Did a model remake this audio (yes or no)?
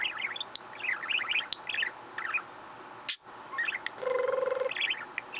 no